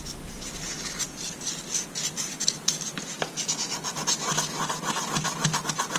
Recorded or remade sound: recorded